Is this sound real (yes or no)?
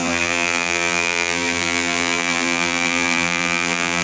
no